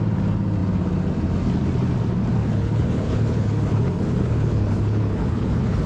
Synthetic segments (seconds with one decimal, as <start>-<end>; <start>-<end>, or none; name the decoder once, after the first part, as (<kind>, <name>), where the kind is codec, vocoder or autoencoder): 2.4-5.9 (codec, HILCodec)